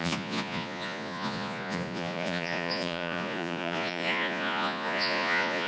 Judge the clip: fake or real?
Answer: fake